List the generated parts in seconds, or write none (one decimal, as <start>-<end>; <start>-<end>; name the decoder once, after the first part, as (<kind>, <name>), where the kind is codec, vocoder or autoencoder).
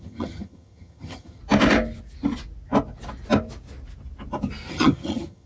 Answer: 0.0-1.4 (vocoder, HiFi-GAN); 4.7-5.5